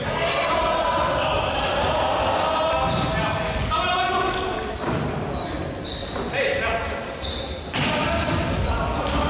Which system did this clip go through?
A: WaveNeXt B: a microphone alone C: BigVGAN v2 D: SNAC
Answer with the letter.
B